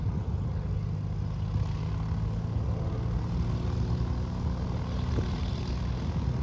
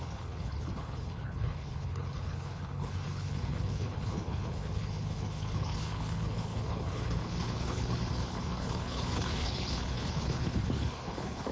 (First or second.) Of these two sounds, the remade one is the second